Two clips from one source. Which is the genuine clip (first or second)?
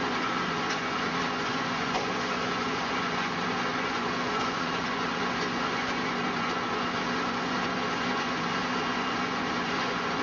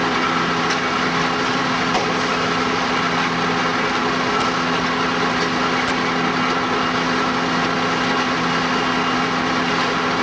second